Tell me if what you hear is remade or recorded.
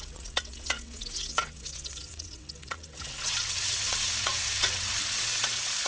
remade